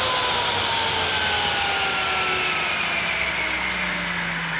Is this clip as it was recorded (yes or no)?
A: yes